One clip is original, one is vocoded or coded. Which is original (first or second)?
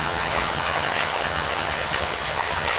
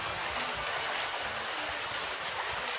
second